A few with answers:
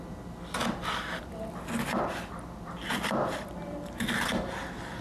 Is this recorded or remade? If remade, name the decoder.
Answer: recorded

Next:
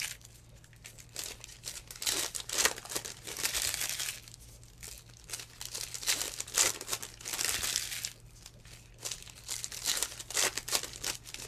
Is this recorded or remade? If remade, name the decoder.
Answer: recorded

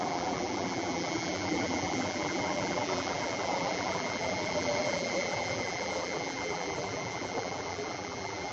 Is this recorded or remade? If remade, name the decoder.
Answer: remade, vocoder, BigVGAN v2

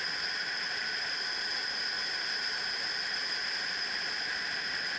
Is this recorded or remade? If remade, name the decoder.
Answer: remade, vocoder, BigVGAN v2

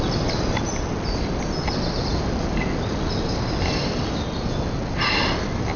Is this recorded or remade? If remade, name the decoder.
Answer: recorded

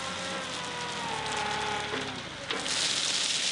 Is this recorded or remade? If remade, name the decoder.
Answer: recorded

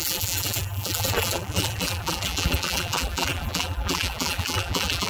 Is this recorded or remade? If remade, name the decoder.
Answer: remade, vocoder, BigVGAN v2